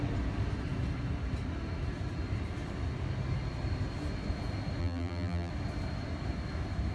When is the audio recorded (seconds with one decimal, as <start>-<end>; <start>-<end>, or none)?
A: 0.0-4.8; 5.5-6.9